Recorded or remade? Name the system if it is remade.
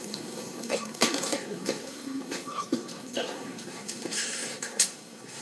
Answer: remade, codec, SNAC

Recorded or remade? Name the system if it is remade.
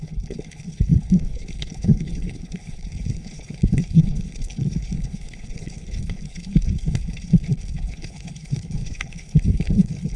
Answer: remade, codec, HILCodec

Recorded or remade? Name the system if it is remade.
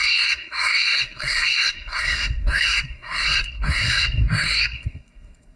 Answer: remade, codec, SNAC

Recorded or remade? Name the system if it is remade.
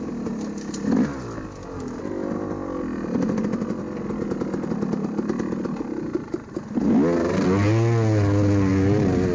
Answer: recorded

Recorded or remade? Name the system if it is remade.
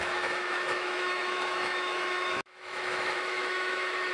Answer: remade, autoencoder, DAC-VAE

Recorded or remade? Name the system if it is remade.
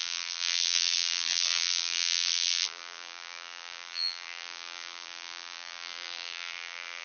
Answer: remade, vocoder, BigVGAN v2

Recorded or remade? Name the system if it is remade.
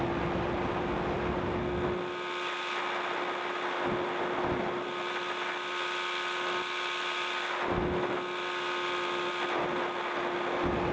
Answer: recorded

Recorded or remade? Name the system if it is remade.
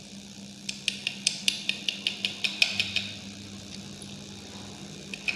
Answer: recorded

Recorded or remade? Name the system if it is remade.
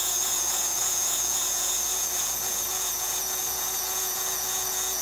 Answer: remade, vocoder, Vocos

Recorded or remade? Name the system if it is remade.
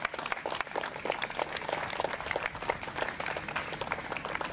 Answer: recorded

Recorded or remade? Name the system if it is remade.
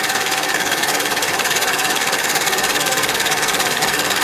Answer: remade, codec, SNAC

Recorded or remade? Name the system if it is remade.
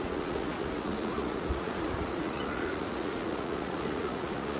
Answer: remade, vocoder, Vocos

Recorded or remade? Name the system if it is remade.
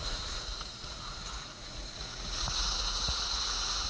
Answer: remade, vocoder, Vocos